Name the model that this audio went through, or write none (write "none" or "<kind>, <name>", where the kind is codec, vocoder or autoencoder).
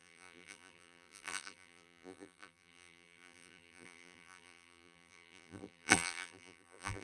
vocoder, BigVGAN v2